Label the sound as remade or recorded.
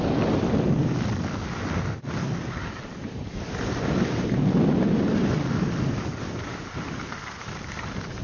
recorded